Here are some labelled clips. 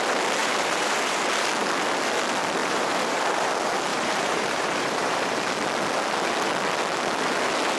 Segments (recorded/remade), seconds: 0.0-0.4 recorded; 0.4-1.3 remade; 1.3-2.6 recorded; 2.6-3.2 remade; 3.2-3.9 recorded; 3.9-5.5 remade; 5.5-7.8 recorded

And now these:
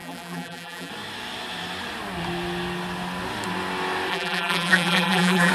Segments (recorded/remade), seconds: 0.0-0.9 remade; 0.9-4.1 recorded; 4.1-5.5 remade

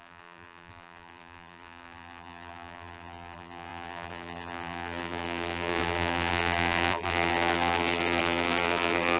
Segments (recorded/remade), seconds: 0.0-9.2 remade